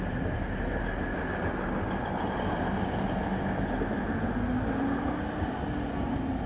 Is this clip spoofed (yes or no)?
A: no